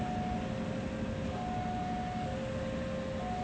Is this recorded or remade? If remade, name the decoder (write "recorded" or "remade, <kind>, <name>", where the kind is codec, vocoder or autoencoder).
recorded